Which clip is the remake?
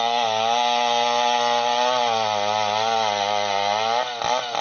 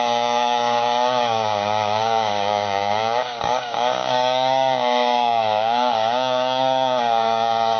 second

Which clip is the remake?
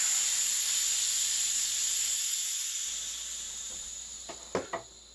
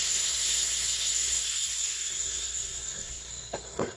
second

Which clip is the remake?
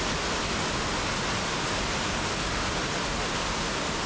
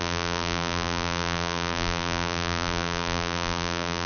second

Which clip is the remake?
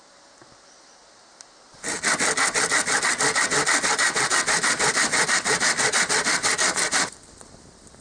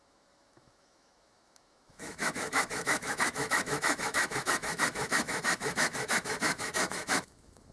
second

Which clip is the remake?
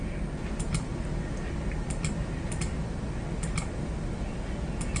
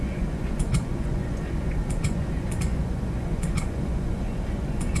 second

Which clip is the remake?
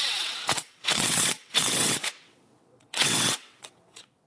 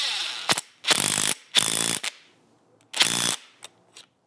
first